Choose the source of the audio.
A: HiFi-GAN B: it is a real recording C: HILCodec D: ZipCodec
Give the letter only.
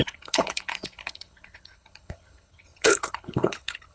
C